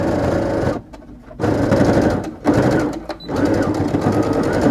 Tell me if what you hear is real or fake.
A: real